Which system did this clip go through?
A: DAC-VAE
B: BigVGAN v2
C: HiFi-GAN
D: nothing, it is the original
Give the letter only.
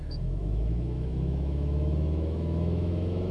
A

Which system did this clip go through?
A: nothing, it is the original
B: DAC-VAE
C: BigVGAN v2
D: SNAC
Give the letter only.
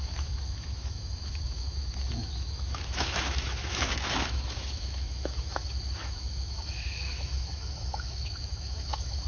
B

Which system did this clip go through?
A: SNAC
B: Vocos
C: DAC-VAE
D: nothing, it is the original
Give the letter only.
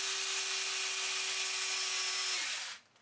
D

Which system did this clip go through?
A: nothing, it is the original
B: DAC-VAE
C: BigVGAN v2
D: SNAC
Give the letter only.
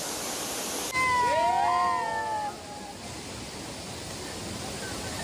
A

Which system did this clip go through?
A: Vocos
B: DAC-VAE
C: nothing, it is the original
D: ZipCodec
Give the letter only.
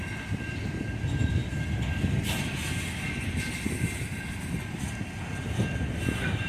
C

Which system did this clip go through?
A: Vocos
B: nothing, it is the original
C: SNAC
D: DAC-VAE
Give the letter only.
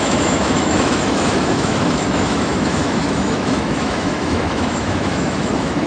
D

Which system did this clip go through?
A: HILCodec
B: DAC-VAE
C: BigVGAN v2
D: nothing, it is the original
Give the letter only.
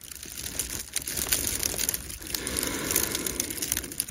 D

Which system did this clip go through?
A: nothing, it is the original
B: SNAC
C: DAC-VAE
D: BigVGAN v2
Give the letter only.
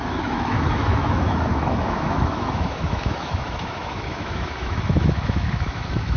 C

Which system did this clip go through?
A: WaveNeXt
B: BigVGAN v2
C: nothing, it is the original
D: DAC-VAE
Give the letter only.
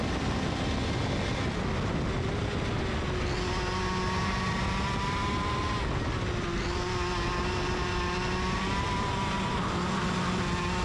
C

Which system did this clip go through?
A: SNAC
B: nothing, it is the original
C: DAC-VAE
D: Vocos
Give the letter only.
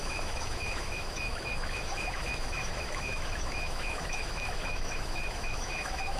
C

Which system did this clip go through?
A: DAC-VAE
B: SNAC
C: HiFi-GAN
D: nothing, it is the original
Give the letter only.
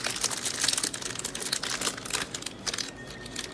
D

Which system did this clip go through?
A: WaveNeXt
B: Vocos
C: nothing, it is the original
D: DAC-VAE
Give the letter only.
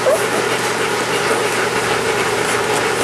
C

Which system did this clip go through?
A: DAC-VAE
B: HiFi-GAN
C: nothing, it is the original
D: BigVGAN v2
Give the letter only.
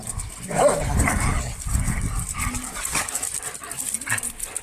C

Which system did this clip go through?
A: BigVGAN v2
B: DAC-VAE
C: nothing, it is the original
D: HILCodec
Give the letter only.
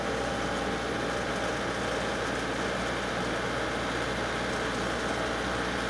C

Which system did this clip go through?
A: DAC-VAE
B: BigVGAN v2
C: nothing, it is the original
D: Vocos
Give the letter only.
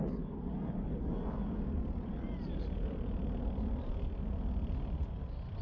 C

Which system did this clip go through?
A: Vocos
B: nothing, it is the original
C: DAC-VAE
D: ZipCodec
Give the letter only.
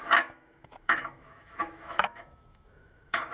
C